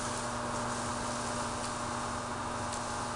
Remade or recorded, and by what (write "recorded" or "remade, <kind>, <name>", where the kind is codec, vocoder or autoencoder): recorded